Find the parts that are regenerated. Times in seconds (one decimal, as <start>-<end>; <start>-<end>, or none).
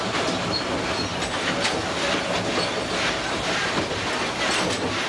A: none